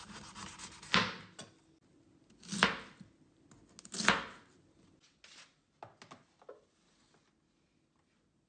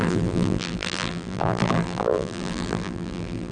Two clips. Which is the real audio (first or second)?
first